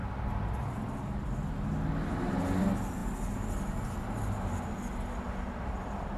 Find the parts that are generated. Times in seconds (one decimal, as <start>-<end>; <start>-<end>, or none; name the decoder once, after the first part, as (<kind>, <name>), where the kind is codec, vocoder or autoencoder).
none